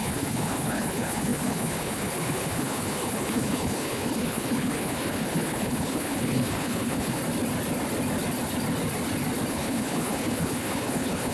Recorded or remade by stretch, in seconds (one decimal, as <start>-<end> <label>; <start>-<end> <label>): 0.0-7.2 remade; 7.2-9.5 recorded; 9.5-11.3 remade